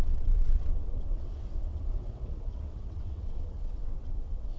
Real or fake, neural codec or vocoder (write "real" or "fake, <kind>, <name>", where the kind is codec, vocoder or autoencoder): fake, vocoder, WaveNeXt